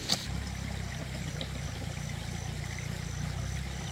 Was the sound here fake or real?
real